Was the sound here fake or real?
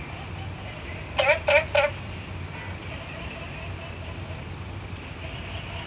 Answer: real